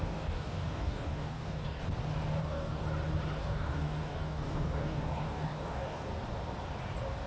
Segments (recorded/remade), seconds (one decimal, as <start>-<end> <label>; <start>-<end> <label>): 0.0-1.8 remade; 1.8-2.4 recorded; 2.4-2.8 remade; 2.8-3.4 recorded; 3.4-6.1 remade; 6.1-7.3 recorded